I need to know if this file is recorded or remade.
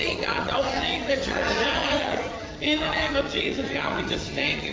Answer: remade